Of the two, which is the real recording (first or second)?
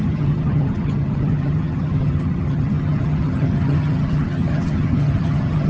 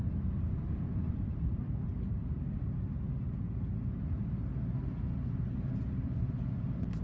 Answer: second